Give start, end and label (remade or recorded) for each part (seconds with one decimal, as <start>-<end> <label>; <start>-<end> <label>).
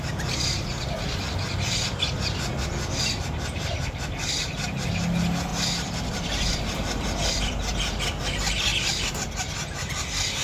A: 0.0-10.4 recorded